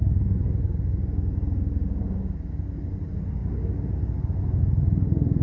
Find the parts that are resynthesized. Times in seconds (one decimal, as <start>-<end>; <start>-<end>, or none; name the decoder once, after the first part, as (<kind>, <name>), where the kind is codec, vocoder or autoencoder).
none